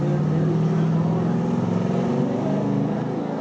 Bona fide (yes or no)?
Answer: yes